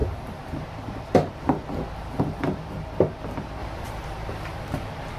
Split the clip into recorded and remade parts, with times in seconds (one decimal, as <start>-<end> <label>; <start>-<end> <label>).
0.0-3.6 recorded; 3.6-5.2 remade